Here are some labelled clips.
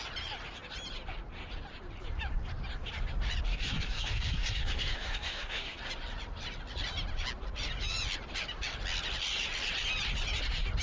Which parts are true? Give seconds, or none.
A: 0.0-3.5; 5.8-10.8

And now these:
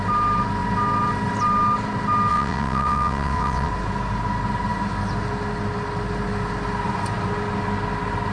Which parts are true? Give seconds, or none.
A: 0.0-2.3; 3.7-8.3

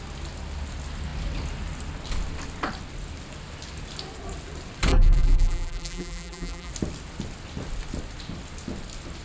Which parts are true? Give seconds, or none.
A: 0.0-4.9; 6.7-9.2

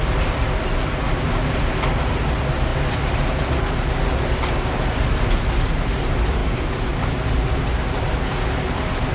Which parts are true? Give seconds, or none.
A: 0.0-9.1